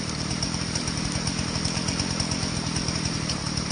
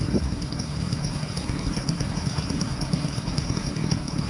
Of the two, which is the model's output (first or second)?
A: second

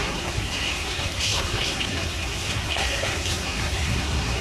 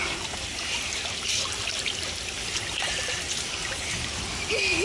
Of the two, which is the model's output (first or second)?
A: first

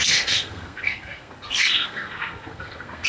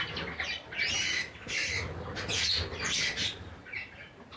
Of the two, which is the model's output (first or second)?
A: first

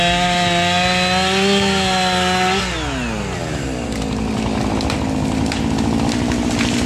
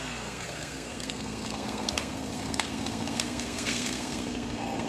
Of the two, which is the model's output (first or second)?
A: second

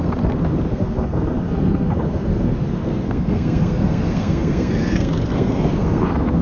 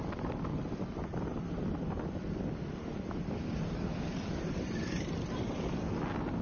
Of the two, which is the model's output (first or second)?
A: first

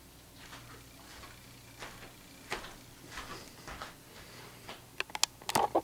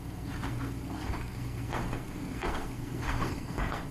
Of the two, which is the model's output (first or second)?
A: second